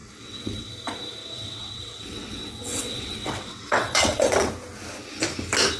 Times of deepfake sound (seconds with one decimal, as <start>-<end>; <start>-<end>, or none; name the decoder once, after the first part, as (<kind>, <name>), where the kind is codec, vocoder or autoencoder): 0.0-0.7 (vocoder, WaveNeXt); 1.2-4.5

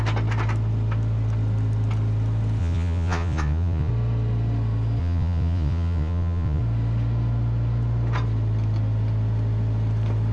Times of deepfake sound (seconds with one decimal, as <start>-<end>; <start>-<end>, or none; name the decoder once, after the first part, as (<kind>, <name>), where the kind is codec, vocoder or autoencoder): 2.6-3.9 (vocoder, Vocos); 5.0-6.6

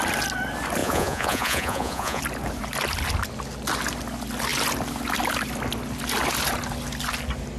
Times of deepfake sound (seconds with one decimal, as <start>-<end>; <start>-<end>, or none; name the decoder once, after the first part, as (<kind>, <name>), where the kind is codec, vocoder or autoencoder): 0.8-2.2 (vocoder, Vocos)

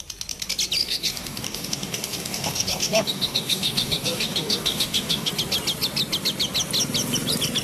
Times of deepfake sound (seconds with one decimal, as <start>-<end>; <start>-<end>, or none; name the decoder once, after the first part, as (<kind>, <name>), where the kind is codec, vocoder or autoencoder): 0.8-5.3 (codec, DAC)